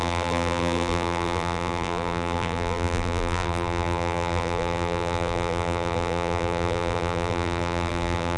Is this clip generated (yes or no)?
yes